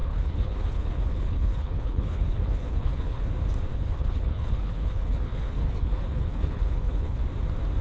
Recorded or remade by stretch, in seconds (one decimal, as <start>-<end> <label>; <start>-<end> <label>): 0.0-3.3 remade; 3.3-3.7 recorded; 3.7-7.2 remade; 7.2-7.8 recorded